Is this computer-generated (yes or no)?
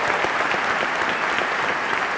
no